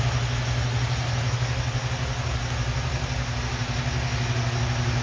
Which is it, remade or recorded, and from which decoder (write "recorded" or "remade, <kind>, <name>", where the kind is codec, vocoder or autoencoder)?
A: recorded